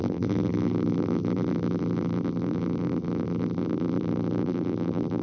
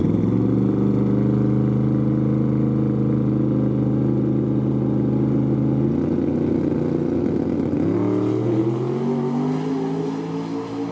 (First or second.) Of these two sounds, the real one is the second